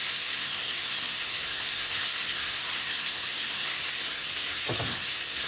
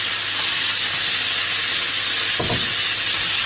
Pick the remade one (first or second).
first